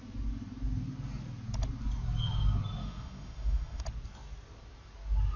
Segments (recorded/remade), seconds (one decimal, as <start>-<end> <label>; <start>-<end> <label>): 0.0-2.8 recorded; 2.8-3.8 remade; 3.8-5.4 recorded